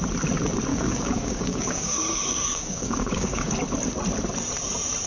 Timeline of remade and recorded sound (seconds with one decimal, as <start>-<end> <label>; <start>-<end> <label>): 0.0-0.7 recorded; 0.7-3.5 remade; 3.5-5.1 recorded